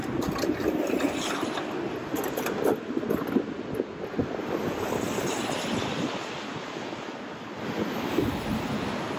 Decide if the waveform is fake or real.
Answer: real